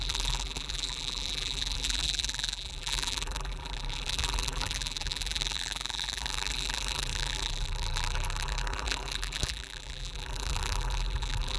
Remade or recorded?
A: remade